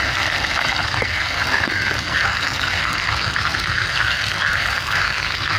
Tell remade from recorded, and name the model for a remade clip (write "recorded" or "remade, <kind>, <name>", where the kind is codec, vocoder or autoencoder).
remade, codec, SNAC